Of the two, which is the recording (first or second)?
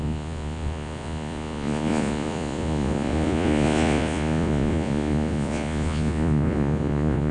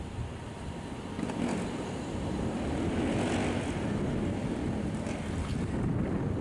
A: second